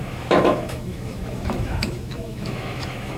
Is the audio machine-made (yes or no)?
yes